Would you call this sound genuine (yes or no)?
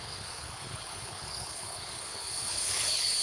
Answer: no